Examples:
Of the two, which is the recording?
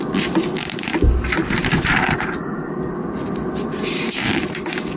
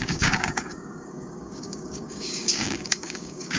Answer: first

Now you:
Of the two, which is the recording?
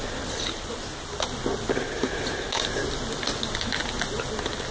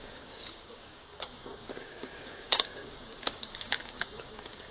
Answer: first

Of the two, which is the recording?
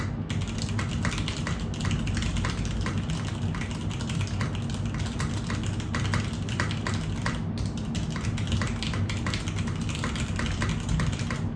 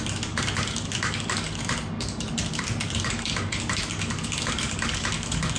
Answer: first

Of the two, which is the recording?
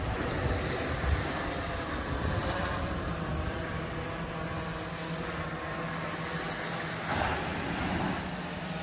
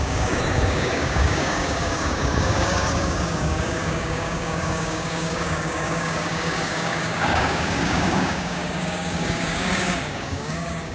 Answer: first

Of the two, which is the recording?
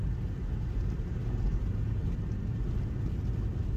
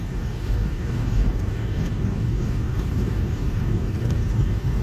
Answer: first